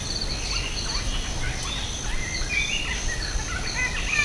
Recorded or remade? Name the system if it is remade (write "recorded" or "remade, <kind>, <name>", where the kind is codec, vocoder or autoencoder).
recorded